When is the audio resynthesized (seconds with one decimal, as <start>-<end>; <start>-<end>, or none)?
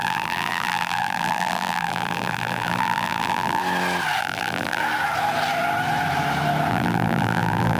0.0-3.6; 4.2-4.8; 6.7-7.8